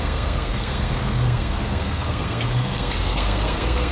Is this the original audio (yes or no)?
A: no